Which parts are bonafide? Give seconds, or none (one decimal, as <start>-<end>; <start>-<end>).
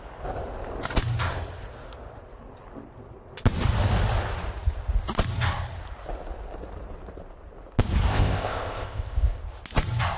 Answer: 0.0-8.1; 9.4-10.2